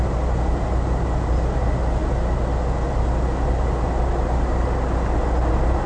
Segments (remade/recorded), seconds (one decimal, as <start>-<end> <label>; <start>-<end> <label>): 0.0-5.9 recorded